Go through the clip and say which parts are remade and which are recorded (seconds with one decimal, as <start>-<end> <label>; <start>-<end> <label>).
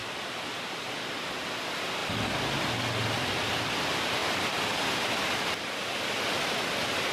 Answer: 0.0-0.7 remade; 0.7-4.2 recorded; 4.2-6.0 remade; 6.0-7.1 recorded